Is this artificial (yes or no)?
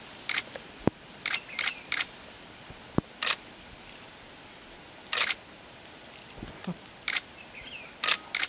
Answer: no